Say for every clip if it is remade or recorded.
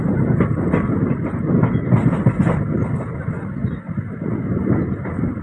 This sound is recorded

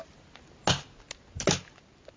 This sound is recorded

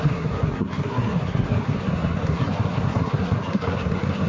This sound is remade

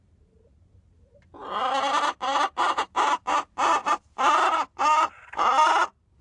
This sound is remade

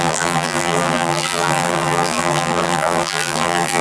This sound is remade